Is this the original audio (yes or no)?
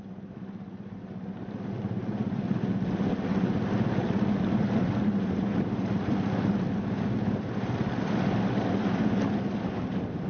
yes